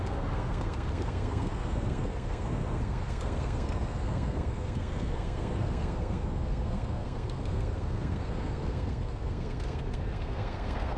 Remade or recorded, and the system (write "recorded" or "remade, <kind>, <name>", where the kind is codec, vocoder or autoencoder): remade, codec, SNAC